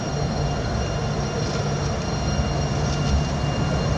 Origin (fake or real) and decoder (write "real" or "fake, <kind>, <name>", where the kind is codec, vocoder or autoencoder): real